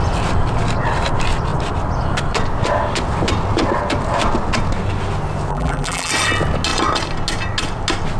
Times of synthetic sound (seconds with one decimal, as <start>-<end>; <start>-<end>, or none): 5.5-6.1